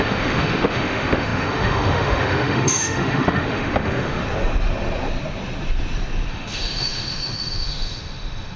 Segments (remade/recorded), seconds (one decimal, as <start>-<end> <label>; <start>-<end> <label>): 0.0-4.2 remade; 4.2-6.3 recorded; 6.3-8.6 remade